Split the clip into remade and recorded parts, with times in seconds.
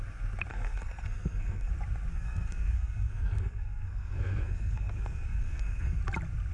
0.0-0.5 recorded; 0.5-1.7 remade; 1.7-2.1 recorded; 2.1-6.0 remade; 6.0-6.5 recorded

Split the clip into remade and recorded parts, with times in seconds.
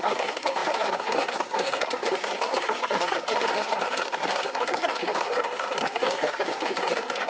0.0-7.3 remade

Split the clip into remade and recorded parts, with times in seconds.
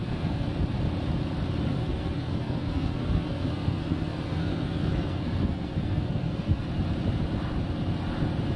0.0-0.5 remade; 0.5-1.7 recorded; 1.7-6.7 remade; 6.7-8.6 recorded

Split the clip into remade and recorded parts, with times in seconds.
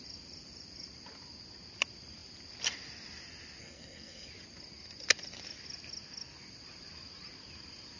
0.0-3.6 recorded; 3.6-4.3 remade; 4.3-8.0 recorded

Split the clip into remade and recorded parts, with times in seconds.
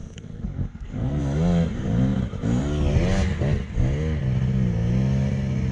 0.0-1.2 remade; 1.2-5.7 recorded